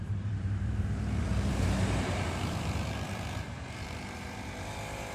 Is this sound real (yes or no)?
no